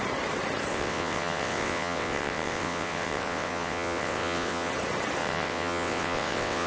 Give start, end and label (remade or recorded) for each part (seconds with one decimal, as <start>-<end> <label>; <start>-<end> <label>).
0.0-0.7 recorded; 0.7-4.7 remade; 4.7-5.2 recorded; 5.2-6.7 remade